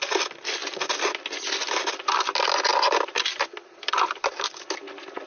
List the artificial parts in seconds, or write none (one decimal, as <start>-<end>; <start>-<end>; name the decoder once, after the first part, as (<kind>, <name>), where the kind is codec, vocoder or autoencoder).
2.7-4.6 (vocoder, BigVGAN v2)